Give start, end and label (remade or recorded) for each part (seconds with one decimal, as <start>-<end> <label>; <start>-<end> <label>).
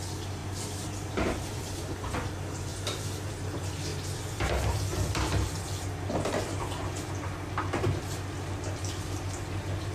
0.0-0.4 recorded; 0.4-1.7 remade; 1.7-2.7 recorded; 2.7-3.3 remade; 3.3-9.9 recorded